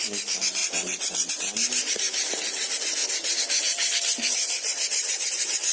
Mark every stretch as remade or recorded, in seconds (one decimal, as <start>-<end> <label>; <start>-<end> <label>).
0.0-0.6 recorded; 0.6-1.3 remade; 1.3-5.7 recorded